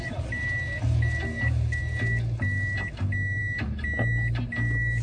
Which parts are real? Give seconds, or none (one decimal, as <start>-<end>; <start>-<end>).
0.0-5.0